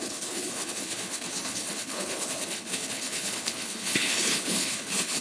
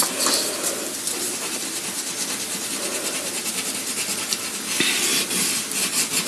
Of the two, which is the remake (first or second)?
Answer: first